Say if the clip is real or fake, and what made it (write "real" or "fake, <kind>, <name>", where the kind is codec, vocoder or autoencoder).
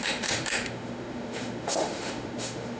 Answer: fake, autoencoder, DAC-VAE